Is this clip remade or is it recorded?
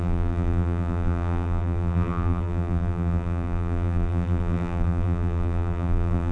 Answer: remade